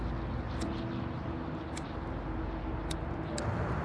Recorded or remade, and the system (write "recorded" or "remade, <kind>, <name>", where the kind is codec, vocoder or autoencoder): recorded